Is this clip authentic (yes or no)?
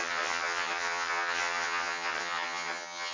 no